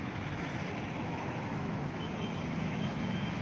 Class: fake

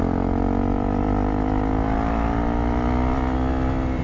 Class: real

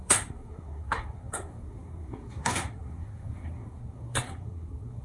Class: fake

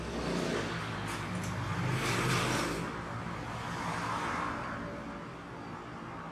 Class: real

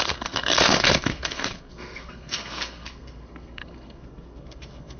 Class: fake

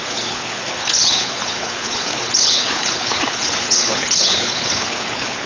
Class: fake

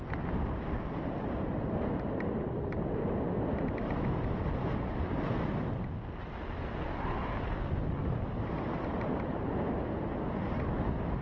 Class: real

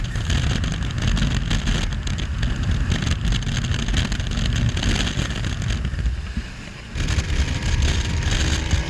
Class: real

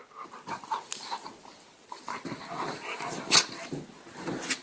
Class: real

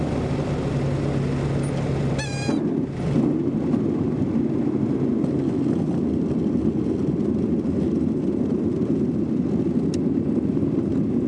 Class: real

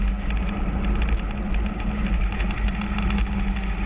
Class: real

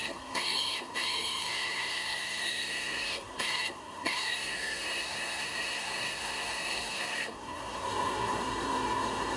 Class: fake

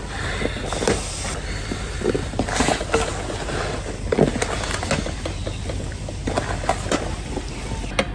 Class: real